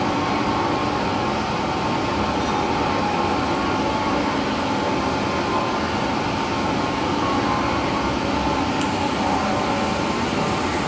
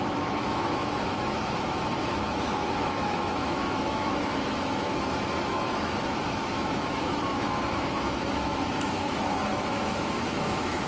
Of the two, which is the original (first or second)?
first